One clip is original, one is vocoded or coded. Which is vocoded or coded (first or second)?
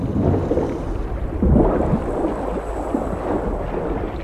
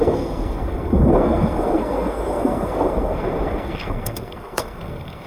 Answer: second